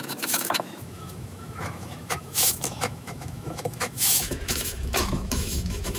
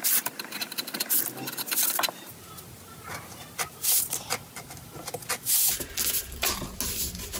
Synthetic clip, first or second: first